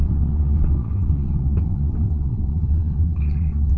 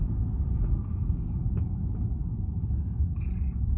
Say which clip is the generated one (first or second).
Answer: first